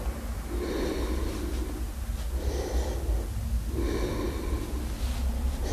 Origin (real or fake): real